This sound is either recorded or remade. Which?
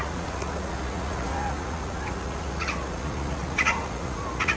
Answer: remade